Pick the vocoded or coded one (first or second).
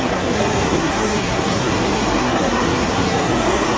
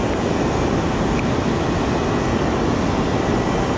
first